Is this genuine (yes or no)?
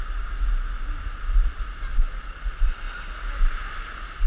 yes